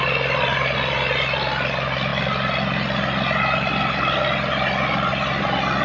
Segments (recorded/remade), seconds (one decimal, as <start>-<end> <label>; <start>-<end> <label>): 0.0-5.8 recorded